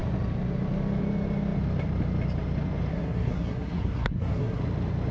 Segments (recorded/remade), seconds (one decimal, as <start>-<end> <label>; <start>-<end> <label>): 0.0-2.9 recorded; 2.9-4.6 remade; 4.6-5.1 recorded